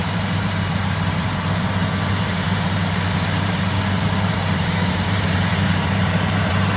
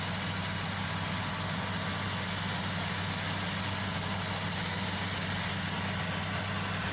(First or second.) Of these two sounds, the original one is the second